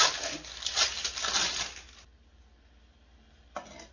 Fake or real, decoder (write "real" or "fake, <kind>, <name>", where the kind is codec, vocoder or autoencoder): real